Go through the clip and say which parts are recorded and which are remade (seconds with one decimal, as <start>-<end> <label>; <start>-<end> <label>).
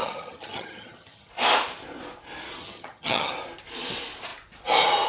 0.0-1.3 remade; 1.3-2.6 recorded; 2.6-3.3 remade; 3.3-5.1 recorded